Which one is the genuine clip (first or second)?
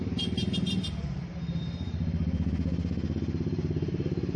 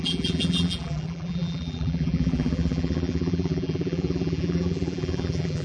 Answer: first